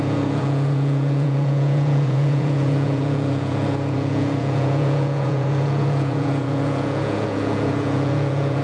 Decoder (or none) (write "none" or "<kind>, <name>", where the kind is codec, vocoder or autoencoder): vocoder, Vocos